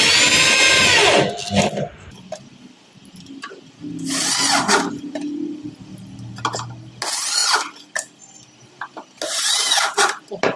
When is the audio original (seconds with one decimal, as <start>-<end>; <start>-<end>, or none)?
0.0-10.6